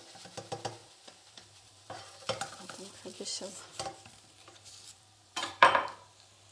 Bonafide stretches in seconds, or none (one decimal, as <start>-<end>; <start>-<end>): 0.0-0.8; 2.9-3.7; 5.9-6.5